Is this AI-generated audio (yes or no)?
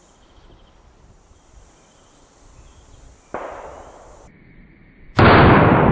no